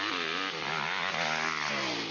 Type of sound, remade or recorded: recorded